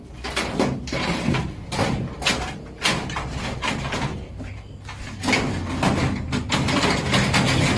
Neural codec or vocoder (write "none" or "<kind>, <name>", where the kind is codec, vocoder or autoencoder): none